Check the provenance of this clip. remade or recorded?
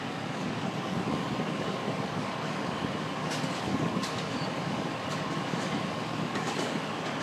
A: remade